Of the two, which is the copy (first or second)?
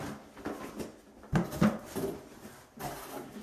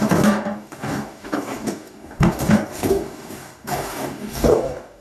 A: second